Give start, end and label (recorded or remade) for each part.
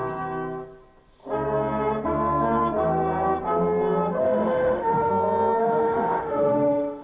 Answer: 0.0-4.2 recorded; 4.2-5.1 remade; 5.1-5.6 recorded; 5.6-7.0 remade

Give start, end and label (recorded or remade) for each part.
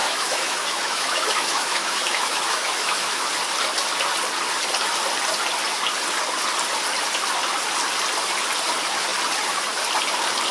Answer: 0.0-3.3 remade; 3.3-10.5 recorded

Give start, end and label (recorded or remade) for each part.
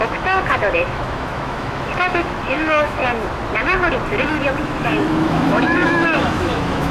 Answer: 0.0-3.0 remade; 3.0-4.6 recorded; 4.6-6.9 remade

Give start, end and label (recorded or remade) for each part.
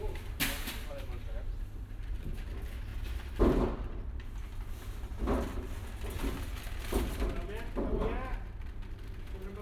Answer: 0.0-9.6 recorded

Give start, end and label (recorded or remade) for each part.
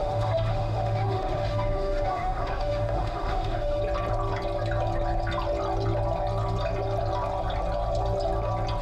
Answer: 0.0-3.8 remade; 3.8-8.8 recorded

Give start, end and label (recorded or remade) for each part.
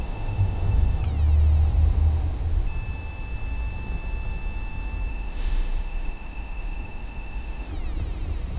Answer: 0.0-1.0 remade; 1.0-5.1 recorded; 5.1-7.7 remade; 7.7-8.6 recorded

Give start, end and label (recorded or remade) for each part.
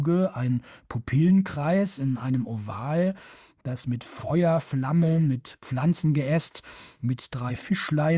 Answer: 0.0-1.3 recorded; 1.3-3.6 remade; 3.6-4.2 recorded; 4.2-7.5 remade; 7.5-8.2 recorded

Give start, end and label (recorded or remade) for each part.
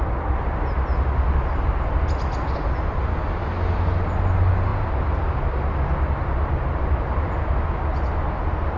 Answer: 0.0-8.8 recorded